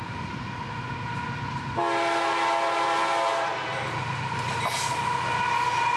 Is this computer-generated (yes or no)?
no